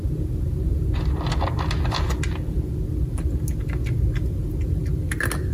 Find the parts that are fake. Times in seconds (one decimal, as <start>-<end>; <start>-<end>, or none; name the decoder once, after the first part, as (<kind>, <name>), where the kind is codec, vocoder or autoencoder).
none